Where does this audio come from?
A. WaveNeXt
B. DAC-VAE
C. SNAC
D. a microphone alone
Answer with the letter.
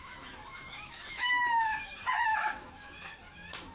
B